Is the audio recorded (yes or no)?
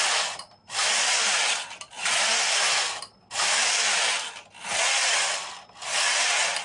yes